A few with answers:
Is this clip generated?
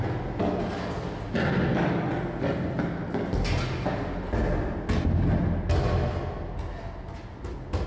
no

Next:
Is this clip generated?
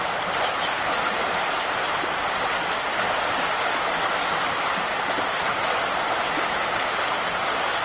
no